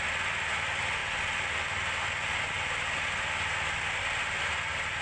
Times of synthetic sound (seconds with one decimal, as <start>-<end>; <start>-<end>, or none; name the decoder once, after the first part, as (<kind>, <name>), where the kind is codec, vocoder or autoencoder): none